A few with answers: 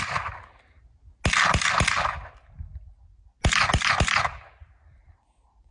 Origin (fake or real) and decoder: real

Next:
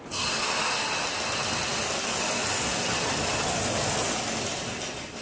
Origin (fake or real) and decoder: real